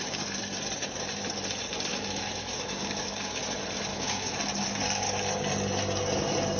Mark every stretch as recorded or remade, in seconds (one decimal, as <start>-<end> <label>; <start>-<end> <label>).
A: 0.0-1.9 recorded; 1.9-3.4 remade; 3.4-3.9 recorded; 3.9-4.4 remade; 4.4-6.6 recorded